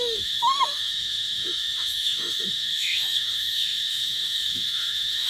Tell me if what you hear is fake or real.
fake